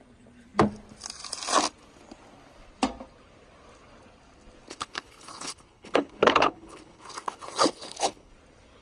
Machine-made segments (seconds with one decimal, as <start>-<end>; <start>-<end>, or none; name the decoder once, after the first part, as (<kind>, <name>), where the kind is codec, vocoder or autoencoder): 4.7-8.3 (codec, HILCodec)